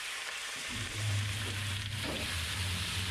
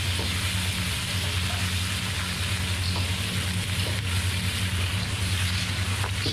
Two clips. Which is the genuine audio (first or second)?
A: second